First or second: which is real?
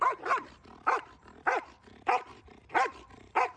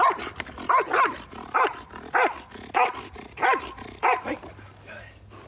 second